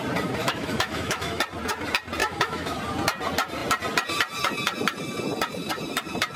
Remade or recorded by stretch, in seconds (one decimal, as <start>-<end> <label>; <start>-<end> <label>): 0.0-0.4 recorded; 0.4-1.4 remade; 1.4-2.2 recorded; 2.2-2.8 remade; 2.8-6.4 recorded